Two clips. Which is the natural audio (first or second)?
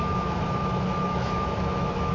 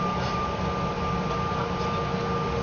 second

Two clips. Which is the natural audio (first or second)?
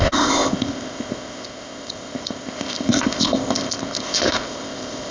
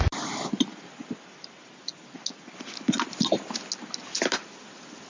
second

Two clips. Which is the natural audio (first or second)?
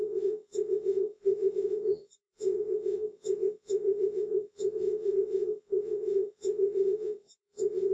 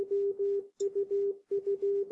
second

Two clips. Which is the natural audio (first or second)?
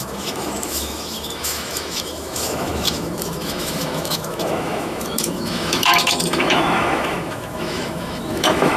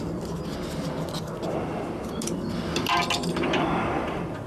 second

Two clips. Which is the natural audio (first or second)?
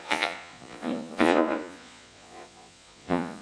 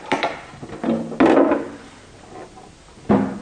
second